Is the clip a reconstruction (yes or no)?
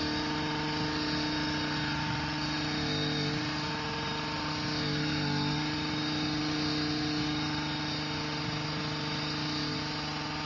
no